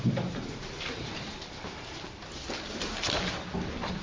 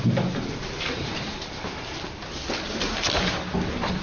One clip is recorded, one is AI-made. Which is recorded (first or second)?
second